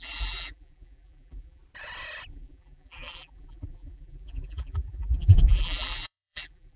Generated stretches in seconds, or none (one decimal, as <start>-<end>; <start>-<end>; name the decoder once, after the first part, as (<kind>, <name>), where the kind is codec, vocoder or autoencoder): 0.0-1.6 (vocoder, BigVGAN v2); 2.3-6.8